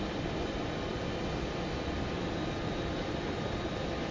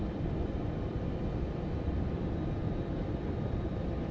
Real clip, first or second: first